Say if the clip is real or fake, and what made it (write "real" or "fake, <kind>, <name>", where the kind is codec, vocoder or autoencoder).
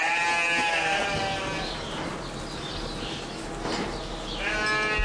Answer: real